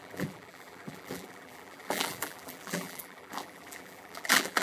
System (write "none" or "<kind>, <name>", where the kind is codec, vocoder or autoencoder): vocoder, BigVGAN v2